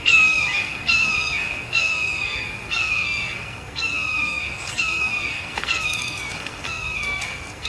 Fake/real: fake